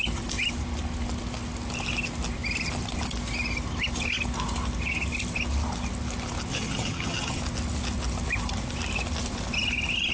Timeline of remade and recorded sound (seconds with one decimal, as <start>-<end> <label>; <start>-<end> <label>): 0.0-6.5 recorded; 6.5-7.4 remade; 7.4-10.1 recorded